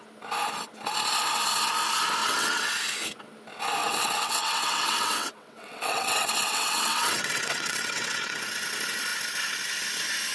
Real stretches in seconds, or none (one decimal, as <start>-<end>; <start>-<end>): 0.0-2.2; 2.7-3.8; 8.4-10.3